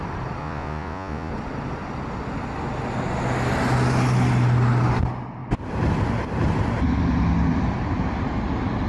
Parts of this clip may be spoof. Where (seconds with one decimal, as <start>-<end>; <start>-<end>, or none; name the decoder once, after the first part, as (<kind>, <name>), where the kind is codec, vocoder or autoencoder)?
0.4-1.3 (vocoder, Vocos)